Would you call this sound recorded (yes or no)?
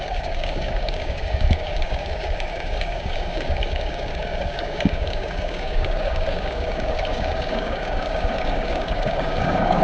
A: no